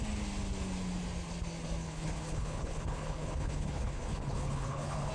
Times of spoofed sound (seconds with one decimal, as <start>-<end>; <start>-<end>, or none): 1.8-5.1